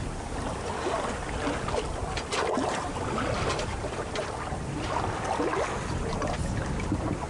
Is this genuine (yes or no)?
yes